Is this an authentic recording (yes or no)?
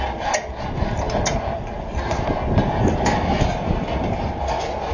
yes